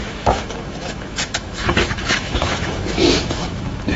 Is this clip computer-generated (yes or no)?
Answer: yes